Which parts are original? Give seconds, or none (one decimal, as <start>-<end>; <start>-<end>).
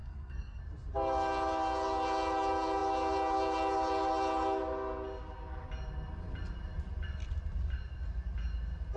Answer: 0.6-9.0